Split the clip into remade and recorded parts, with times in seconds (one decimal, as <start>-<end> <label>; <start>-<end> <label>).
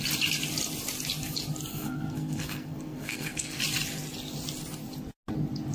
0.0-1.7 recorded; 1.7-3.6 remade; 3.6-5.7 recorded